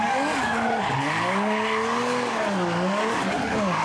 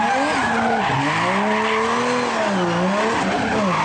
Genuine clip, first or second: second